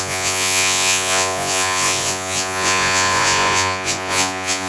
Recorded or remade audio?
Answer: remade